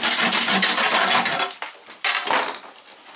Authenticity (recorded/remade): recorded